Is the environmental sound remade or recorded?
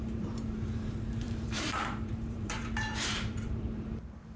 remade